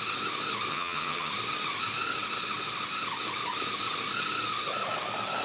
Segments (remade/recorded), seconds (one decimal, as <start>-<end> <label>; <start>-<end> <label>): 0.0-0.7 recorded; 0.7-1.3 remade; 1.3-5.4 recorded